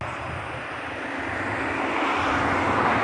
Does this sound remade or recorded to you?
recorded